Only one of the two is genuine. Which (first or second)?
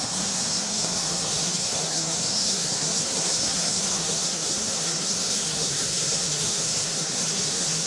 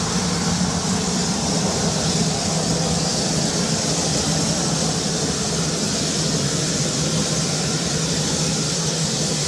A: second